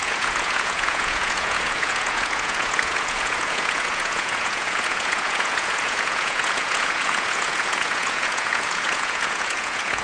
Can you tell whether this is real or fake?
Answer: fake